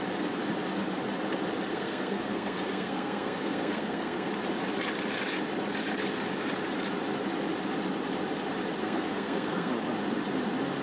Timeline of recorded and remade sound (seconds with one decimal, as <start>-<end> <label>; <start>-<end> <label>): 0.0-1.7 recorded; 1.7-4.3 remade; 4.3-8.8 recorded; 8.8-9.7 remade; 9.7-10.8 recorded